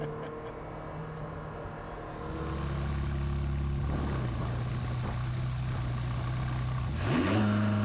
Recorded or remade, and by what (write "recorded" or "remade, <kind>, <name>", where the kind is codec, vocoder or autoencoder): recorded